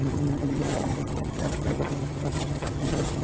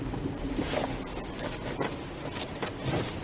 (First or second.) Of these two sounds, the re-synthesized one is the first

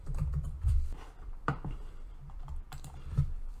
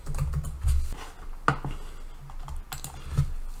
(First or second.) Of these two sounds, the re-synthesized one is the first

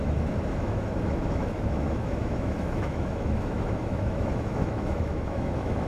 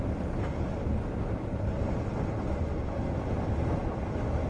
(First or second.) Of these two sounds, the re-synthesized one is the first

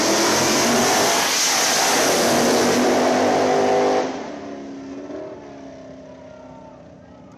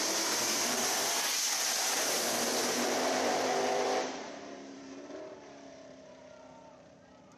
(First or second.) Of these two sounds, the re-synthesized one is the second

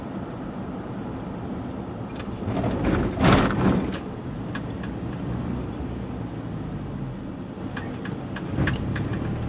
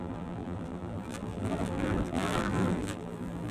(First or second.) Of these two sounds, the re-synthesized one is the second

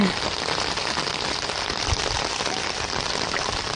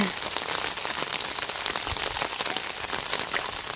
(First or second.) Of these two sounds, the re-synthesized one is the first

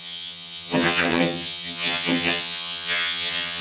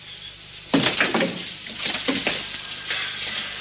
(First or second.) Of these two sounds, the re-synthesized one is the first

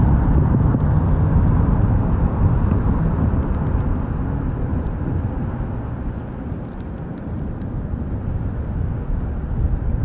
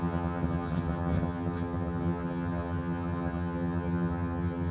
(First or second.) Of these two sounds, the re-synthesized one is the second